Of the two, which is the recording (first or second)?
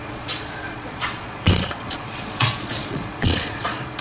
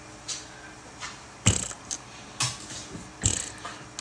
second